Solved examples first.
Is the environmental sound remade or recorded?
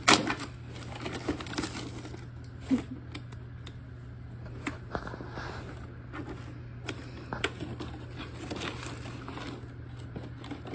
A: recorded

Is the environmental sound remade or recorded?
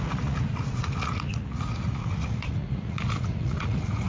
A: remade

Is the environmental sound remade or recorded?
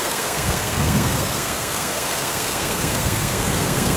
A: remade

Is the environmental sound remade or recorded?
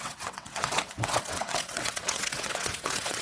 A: remade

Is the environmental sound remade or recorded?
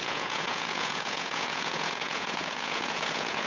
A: remade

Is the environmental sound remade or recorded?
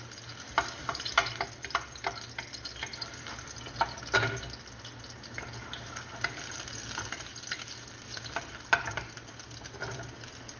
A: recorded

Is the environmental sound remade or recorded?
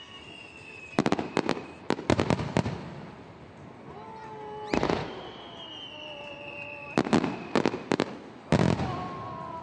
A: recorded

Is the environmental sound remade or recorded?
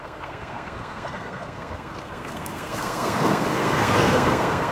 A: remade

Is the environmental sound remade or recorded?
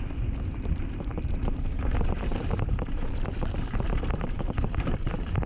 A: remade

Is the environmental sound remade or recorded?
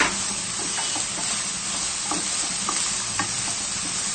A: recorded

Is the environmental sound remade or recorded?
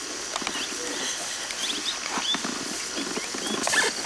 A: recorded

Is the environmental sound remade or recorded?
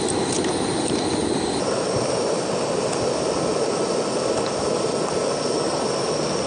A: recorded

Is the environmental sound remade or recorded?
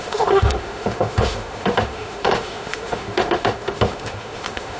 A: remade